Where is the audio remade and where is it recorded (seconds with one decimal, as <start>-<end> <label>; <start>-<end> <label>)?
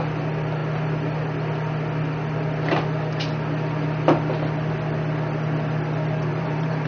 0.0-6.3 recorded; 6.3-6.9 remade